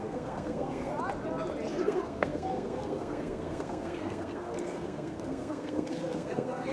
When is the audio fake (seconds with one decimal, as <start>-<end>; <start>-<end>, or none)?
0.0-0.9; 1.7-6.7